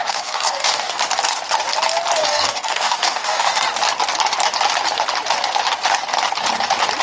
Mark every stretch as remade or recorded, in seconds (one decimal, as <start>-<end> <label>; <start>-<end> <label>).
0.0-0.9 remade; 0.9-2.2 recorded; 2.2-3.5 remade; 3.5-7.0 recorded